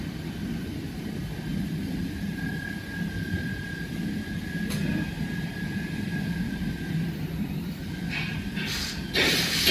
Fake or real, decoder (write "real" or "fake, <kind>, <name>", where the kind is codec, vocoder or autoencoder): fake, vocoder, BigVGAN v2